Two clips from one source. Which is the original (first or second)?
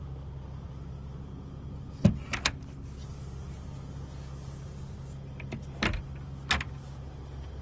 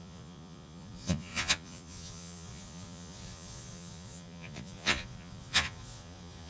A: first